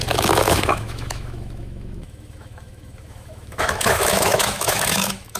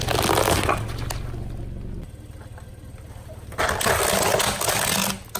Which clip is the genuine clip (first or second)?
second